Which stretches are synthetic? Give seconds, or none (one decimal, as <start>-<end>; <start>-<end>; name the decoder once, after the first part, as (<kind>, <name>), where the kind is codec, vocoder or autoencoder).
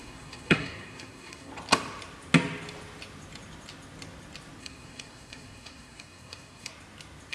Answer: 0.0-1.5 (codec, SNAC); 4.6-6.7